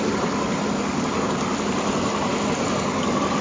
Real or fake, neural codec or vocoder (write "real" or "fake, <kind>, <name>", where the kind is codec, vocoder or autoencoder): real